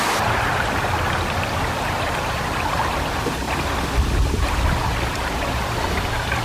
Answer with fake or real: real